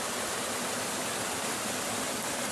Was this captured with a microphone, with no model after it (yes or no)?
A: yes